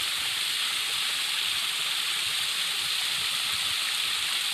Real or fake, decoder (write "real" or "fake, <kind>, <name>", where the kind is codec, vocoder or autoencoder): real